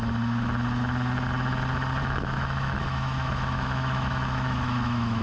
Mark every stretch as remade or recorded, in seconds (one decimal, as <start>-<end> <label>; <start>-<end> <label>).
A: 0.0-2.0 recorded; 2.0-5.2 remade